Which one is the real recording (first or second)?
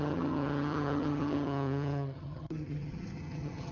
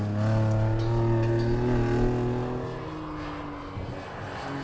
second